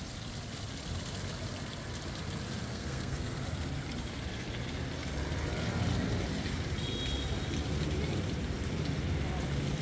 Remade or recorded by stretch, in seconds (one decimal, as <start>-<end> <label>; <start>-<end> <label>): 0.0-2.7 recorded; 2.7-3.4 remade; 3.4-9.8 recorded